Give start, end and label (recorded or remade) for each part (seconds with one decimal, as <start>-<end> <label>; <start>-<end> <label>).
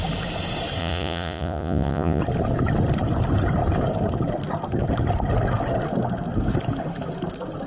0.0-0.8 recorded; 0.8-2.2 remade; 2.2-7.7 recorded